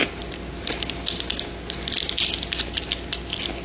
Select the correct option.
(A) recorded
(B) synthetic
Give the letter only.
A